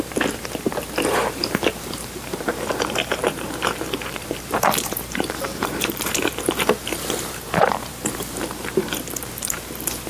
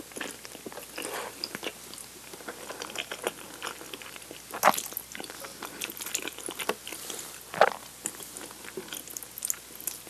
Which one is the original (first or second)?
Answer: second